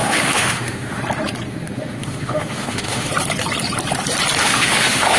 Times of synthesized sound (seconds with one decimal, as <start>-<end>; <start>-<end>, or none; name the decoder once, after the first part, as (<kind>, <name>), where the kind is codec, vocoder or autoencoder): 0.0-1.0 (autoencoder, DAC-VAE); 1.5-3.1; 4.4-5.2